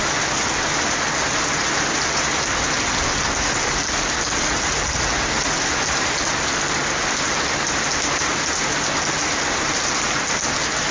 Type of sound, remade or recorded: recorded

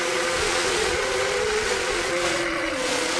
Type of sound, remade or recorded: remade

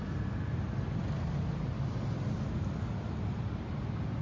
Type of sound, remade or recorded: recorded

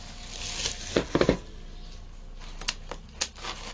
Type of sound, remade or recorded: recorded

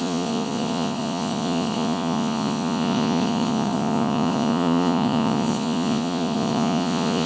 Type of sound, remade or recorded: remade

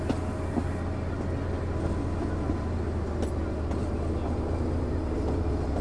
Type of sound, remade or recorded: recorded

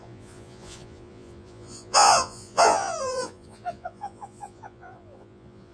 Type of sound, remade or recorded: remade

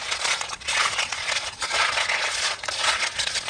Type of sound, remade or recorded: remade